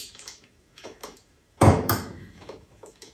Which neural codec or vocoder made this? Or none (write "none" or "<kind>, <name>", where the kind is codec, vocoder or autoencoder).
autoencoder, DAC-VAE